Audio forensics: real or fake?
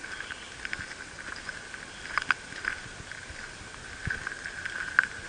real